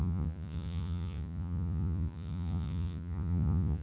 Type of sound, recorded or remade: remade